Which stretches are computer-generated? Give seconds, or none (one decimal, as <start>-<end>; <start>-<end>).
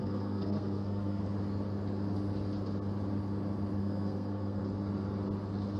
0.0-1.2; 3.8-4.6